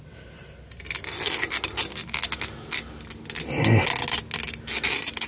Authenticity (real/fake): real